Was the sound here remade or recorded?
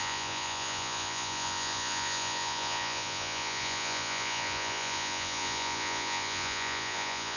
remade